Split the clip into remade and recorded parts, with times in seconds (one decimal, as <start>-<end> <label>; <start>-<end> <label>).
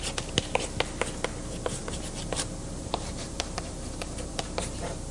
0.0-1.8 recorded; 1.8-5.1 remade